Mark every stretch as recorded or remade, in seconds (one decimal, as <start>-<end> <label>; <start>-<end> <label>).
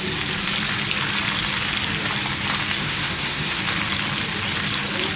0.0-2.8 recorded; 2.8-3.6 remade; 3.6-5.2 recorded